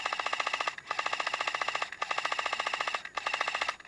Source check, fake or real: real